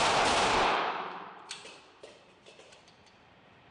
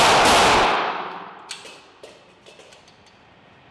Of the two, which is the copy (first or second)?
first